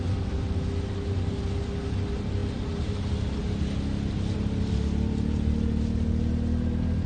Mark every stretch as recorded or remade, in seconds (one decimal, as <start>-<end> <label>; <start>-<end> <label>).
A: 0.0-7.1 recorded